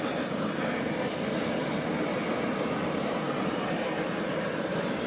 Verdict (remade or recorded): recorded